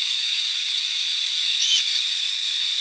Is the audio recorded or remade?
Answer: remade